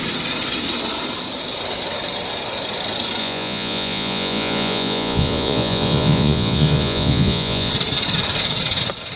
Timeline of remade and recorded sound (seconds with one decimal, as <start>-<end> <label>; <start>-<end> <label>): 0.0-3.2 recorded; 3.2-7.7 remade; 7.7-9.2 recorded